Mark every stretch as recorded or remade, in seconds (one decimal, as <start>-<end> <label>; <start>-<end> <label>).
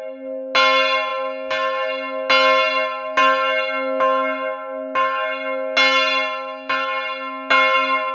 0.0-8.1 recorded